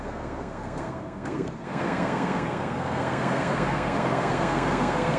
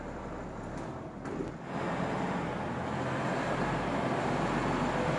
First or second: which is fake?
first